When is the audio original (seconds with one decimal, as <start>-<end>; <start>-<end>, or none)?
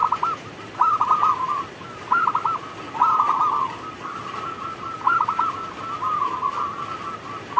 0.0-7.6